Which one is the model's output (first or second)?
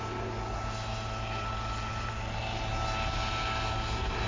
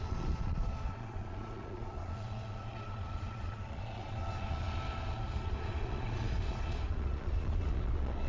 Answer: second